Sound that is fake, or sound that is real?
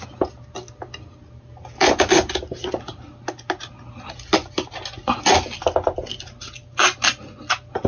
real